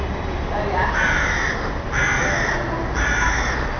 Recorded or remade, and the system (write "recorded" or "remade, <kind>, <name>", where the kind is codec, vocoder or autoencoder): recorded